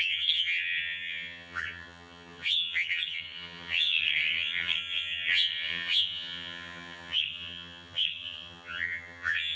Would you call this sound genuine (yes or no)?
no